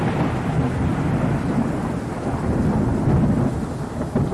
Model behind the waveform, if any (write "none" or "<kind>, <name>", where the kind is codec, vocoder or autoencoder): none